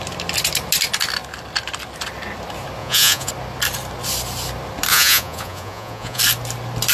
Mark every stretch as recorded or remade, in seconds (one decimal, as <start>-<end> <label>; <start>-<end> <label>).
0.0-2.8 recorded; 2.8-3.3 remade; 3.3-4.9 recorded; 4.9-6.2 remade; 6.2-6.9 recorded